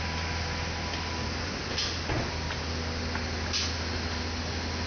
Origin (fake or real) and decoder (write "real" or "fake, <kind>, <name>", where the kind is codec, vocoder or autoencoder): real